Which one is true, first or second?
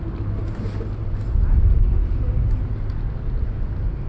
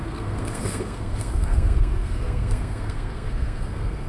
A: first